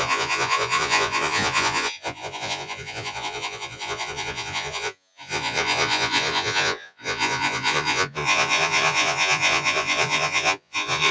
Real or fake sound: fake